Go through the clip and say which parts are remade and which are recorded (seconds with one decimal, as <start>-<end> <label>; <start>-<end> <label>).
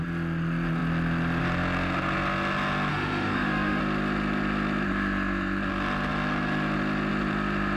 0.0-2.9 recorded; 2.9-3.8 remade; 3.8-7.8 recorded